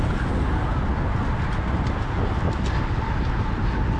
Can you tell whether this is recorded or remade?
recorded